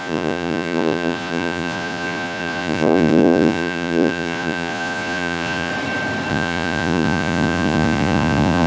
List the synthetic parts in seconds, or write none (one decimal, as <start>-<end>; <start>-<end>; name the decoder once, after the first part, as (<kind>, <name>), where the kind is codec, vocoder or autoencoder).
0.0-5.7 (vocoder, Vocos); 6.3-8.7